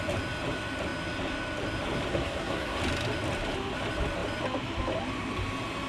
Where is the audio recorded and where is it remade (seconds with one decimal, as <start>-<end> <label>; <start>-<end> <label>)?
0.0-2.1 recorded; 2.1-2.8 remade; 2.8-5.9 recorded